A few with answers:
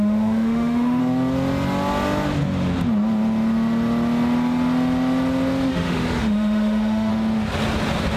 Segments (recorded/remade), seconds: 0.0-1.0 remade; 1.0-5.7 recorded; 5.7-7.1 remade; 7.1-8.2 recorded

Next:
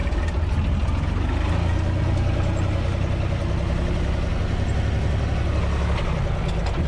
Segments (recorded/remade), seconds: 0.0-6.9 recorded

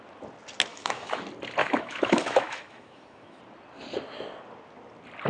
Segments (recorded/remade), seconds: 0.0-0.7 recorded; 0.7-1.2 remade; 1.2-1.6 recorded; 1.6-3.4 remade; 3.4-5.3 recorded

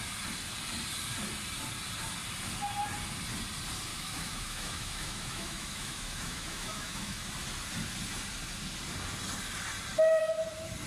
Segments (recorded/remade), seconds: 0.0-3.9 recorded; 3.9-7.3 remade; 7.3-10.9 recorded

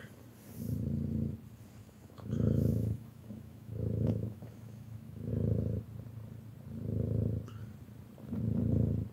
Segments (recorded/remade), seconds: 0.0-1.8 recorded; 1.8-5.3 remade; 5.3-9.1 recorded

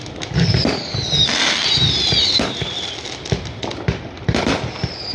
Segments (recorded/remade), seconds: 0.0-5.1 recorded